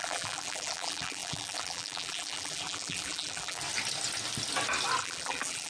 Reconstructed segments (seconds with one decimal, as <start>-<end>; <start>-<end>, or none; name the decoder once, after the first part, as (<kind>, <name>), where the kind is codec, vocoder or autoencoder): 0.0-3.6 (vocoder, BigVGAN v2); 5.0-5.7